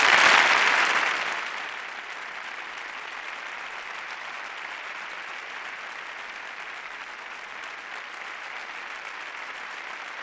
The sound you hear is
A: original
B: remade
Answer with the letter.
A